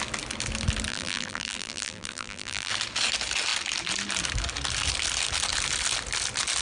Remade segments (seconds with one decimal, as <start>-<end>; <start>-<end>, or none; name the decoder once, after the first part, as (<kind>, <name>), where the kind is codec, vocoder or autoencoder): 0.9-2.7 (vocoder, BigVGAN v2)